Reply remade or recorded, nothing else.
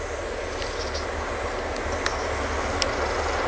recorded